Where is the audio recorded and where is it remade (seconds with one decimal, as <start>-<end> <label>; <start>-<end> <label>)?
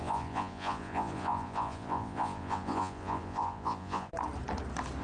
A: 0.0-4.1 remade; 4.1-5.0 recorded